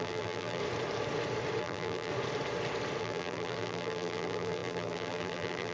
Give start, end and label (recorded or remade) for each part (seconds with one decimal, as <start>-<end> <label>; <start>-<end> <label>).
0.0-0.6 remade; 0.6-1.6 recorded; 1.6-2.1 remade; 2.1-3.0 recorded; 3.0-5.7 remade